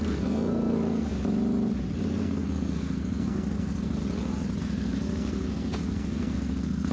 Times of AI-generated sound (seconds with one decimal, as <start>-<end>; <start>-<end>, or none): 0.0-1.1; 2.1-4.0; 4.6-6.9